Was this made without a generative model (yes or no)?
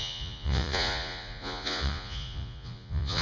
no